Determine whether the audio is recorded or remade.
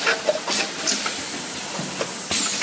recorded